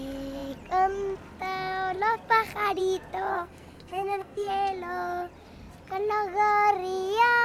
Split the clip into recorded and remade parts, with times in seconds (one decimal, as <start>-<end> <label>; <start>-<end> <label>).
0.0-3.3 recorded; 3.3-4.5 remade; 4.5-7.4 recorded